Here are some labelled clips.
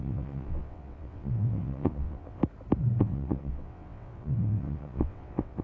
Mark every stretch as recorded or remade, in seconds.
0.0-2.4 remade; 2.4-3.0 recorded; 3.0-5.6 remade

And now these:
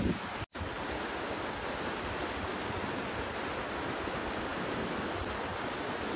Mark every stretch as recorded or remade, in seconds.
0.0-6.2 recorded

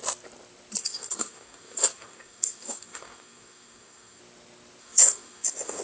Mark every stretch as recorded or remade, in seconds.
0.0-0.8 recorded; 0.8-4.2 remade; 4.2-4.8 recorded; 4.8-5.8 remade